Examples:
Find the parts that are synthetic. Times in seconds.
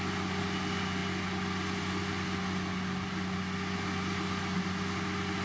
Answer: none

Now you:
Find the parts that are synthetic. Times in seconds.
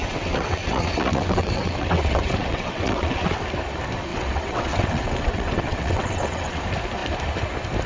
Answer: 0.0-3.4 (vocoder, WaveNeXt); 4.1-6.6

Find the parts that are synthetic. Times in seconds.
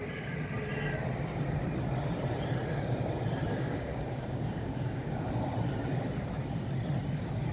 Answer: 3.5-5.3 (codec, DAC)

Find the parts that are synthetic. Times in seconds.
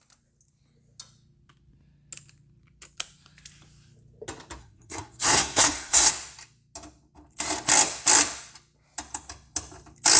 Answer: 4.6-6.1 (codec, SNAC)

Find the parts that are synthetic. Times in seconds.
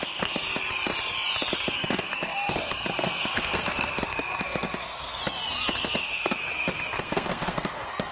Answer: 0.0-0.5 (codec, SNAC); 1.5-5.2; 6.0-6.5; 7.0-8.1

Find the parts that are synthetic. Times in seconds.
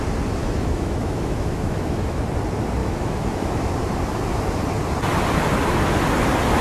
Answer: 0.4-2.2 (autoencoder, DAC-VAE); 2.8-3.7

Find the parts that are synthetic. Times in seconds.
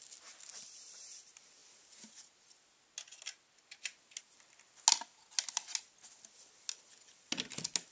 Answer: none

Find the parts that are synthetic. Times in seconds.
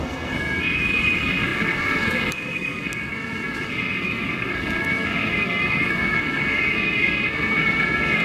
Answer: 0.0-8.2 (codec, SNAC)